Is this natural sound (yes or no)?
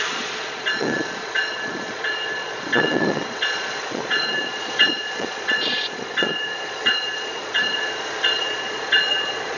no